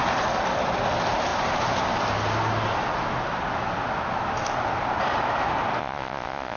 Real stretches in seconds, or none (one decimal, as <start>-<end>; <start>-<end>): 0.0-5.8

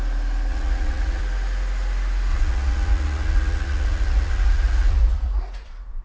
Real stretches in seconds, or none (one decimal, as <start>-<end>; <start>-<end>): 0.0-0.5; 1.2-2.3

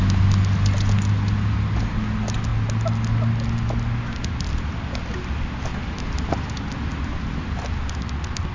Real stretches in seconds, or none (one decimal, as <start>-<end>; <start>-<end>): 0.0-8.5

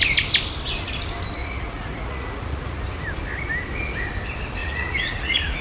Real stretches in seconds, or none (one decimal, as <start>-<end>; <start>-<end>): 0.0-1.4; 2.8-4.6

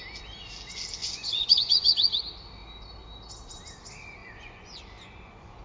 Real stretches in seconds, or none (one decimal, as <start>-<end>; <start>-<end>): 0.0-1.0; 2.2-4.2

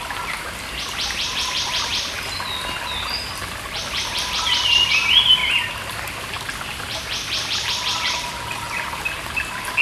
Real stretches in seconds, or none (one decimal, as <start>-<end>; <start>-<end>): 0.0-9.8

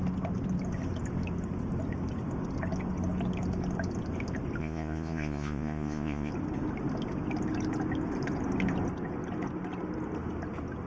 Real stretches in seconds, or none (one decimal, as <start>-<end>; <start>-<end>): 0.0-4.6; 6.3-10.9